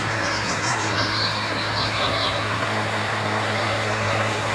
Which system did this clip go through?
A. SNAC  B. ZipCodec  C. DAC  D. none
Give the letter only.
A